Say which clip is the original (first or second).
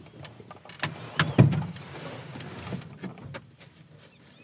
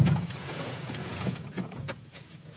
first